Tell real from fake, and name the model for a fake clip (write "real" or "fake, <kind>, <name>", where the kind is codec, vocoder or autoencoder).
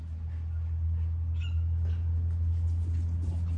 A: real